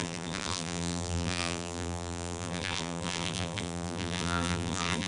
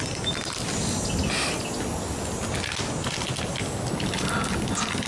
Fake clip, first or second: first